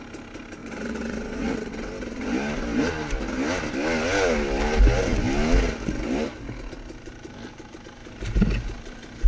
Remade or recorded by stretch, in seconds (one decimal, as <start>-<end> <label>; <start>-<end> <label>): 0.0-0.6 recorded; 0.6-1.9 remade; 1.9-9.3 recorded